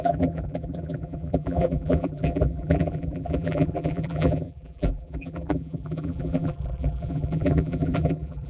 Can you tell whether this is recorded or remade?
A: remade